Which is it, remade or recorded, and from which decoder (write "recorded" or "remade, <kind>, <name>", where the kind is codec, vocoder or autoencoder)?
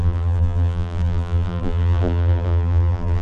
remade, vocoder, BigVGAN v2